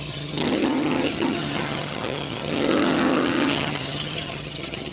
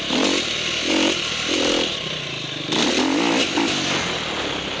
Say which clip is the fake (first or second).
first